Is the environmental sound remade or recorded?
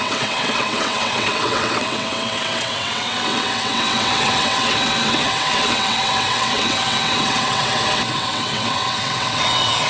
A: remade